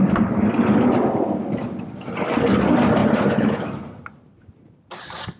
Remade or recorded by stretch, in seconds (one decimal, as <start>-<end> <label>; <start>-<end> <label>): 0.0-3.0 remade; 3.0-4.0 recorded; 4.0-5.4 remade